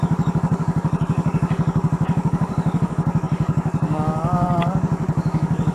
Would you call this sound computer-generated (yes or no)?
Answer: yes